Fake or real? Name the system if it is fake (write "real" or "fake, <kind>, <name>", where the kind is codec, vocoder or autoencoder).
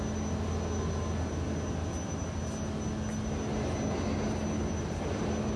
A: real